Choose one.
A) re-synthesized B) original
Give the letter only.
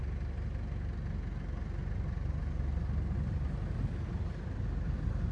B